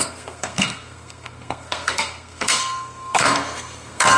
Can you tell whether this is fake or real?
fake